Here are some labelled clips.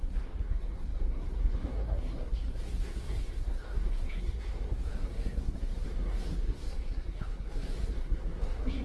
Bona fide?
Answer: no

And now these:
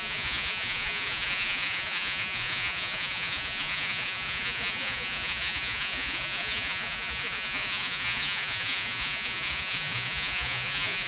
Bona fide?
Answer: no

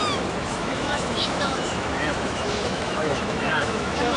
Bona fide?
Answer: no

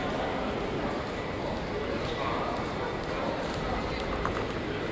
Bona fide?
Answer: yes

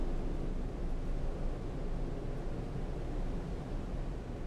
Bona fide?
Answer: yes